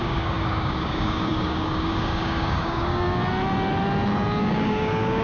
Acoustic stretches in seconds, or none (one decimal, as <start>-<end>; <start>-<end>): 3.2-4.4

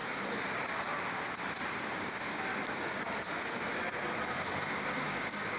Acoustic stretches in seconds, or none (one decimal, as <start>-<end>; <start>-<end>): 0.0-1.9; 2.5-4.7

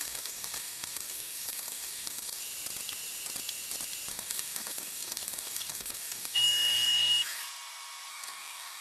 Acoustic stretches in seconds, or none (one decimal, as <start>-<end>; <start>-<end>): 2.4-4.1; 7.4-8.1

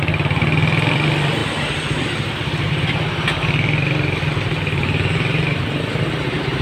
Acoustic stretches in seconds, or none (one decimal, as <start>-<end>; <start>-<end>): 0.0-6.6